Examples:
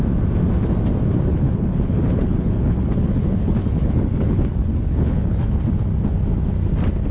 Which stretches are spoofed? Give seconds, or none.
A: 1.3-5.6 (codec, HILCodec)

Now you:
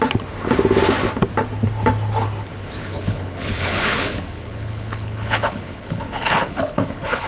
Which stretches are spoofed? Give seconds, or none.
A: 2.5-7.3 (codec, HILCodec)

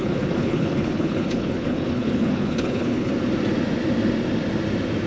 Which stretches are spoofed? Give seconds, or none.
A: 0.0-3.1 (codec, HILCodec)

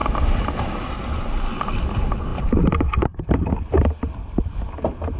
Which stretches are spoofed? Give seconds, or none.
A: none

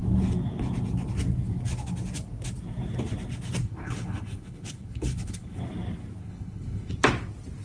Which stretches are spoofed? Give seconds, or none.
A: 3.6-5.6 (codec, HILCodec); 6.2-6.9